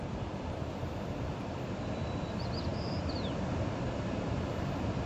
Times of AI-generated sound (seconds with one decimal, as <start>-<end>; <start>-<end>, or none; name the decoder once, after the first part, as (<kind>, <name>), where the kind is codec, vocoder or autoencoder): 0.0-2.7 (vocoder, BigVGAN v2); 4.0-5.1